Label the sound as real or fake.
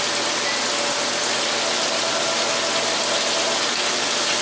real